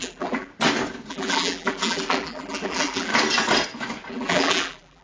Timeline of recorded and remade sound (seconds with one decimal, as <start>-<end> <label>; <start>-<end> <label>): 0.0-0.5 remade; 0.5-1.1 recorded; 1.1-3.1 remade; 3.1-4.1 recorded; 4.1-5.0 remade